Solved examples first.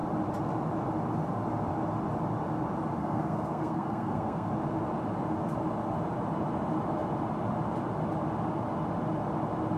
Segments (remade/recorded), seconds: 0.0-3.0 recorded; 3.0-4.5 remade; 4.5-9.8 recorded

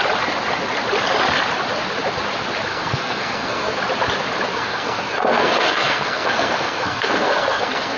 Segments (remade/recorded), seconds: 0.0-2.7 recorded; 2.7-3.8 remade; 3.8-4.5 recorded; 4.5-8.0 remade

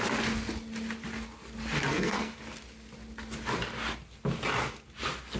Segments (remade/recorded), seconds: 0.0-1.9 recorded; 1.9-2.4 remade; 2.4-5.4 recorded